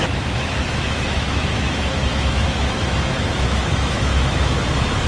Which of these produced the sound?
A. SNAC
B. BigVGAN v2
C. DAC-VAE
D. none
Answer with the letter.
C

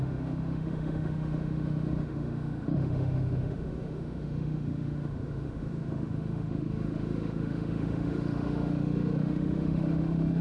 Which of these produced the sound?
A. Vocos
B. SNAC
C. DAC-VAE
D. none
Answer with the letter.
C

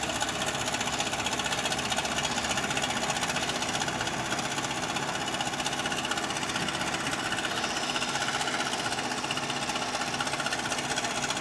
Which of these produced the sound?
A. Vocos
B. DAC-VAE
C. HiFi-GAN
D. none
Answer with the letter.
D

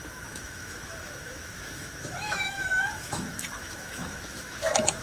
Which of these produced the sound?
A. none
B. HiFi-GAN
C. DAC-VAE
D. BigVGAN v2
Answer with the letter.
C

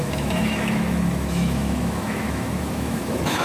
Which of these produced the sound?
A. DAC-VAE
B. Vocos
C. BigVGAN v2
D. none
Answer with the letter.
A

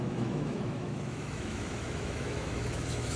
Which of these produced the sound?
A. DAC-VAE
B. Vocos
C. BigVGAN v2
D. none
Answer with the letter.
A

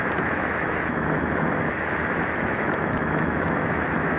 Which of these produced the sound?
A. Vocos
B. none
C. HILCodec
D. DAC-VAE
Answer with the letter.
D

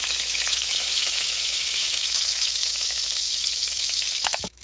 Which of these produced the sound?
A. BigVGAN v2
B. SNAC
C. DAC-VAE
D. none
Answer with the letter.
C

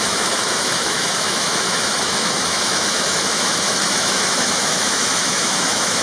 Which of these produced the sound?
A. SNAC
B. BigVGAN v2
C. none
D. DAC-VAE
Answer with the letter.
D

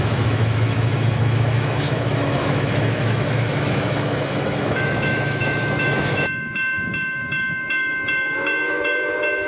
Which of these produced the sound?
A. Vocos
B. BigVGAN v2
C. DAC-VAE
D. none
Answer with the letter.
C